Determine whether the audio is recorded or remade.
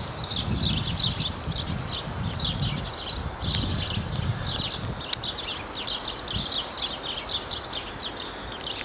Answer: recorded